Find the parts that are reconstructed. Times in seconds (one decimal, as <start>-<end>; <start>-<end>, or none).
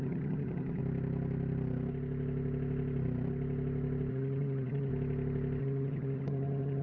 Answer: 0.0-0.8; 4.1-4.9; 5.6-6.8